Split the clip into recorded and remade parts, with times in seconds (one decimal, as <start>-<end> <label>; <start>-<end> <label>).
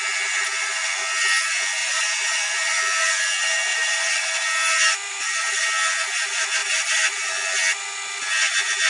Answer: 0.0-1.8 recorded; 1.8-2.8 remade; 2.8-3.7 recorded; 3.7-4.3 remade; 4.3-5.1 recorded; 5.1-5.6 remade; 5.6-6.6 recorded; 6.6-7.3 remade; 7.3-8.9 recorded